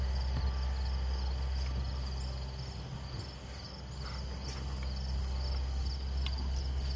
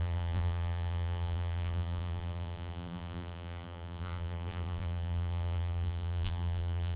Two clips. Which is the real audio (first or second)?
first